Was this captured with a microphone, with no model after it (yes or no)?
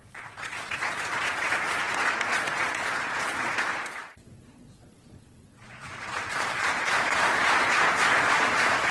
no